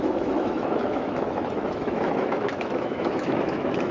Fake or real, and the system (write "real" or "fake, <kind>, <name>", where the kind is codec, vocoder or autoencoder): fake, autoencoder, DAC-VAE